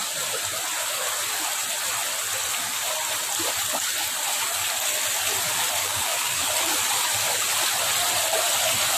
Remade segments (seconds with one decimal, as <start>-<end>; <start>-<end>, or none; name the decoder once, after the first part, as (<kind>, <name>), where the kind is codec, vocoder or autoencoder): 5.8-6.5 (codec, DAC)